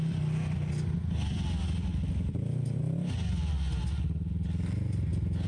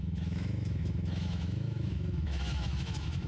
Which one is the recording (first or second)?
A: first